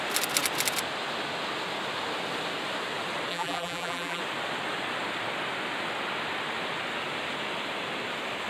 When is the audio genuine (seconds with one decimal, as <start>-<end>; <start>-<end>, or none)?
0.0-3.3; 4.2-8.5